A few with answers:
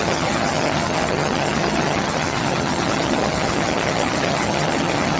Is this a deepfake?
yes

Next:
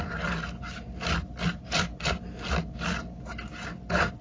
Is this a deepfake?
no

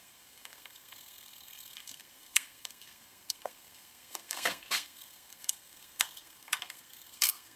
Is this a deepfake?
yes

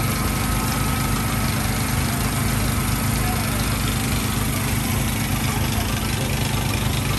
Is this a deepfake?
no